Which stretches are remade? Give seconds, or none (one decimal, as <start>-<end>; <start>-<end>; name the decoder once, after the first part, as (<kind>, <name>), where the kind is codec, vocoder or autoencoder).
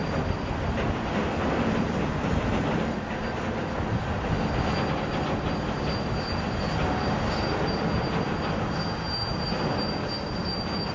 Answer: none